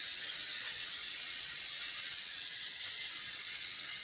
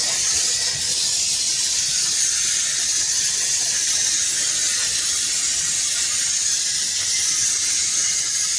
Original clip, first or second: second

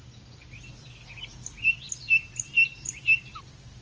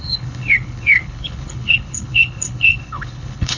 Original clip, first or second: first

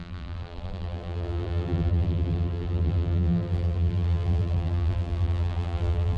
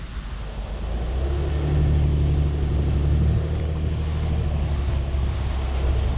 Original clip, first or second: second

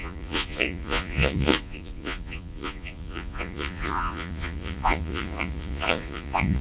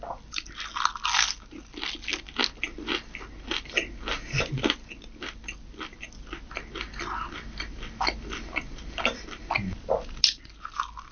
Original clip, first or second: second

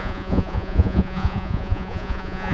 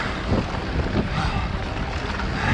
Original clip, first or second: second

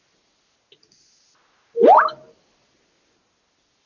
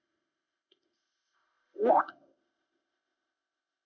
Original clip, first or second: first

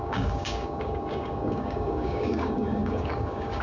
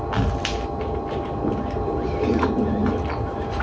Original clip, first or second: second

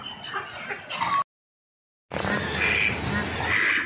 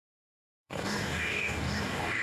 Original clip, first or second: first